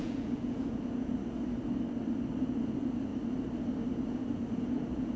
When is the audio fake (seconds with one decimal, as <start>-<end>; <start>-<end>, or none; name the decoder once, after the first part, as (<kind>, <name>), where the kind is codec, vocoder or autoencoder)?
0.0-1.2 (vocoder, Vocos); 2.4-3.1; 4.1-5.2